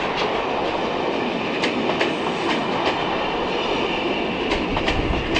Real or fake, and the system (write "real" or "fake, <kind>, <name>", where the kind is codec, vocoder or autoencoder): real